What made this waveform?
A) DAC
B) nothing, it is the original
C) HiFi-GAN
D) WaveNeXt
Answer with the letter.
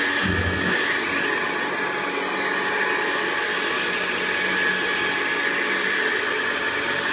B